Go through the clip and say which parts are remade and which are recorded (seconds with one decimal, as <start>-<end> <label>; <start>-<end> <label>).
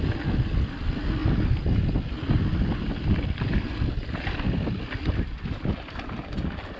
0.0-6.8 recorded